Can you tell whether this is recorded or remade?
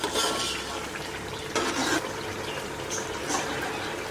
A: recorded